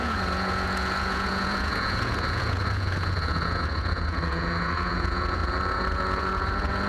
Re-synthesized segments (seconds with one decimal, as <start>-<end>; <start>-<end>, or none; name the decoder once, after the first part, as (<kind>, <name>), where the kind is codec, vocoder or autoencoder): 0.0-6.9 (vocoder, Vocos)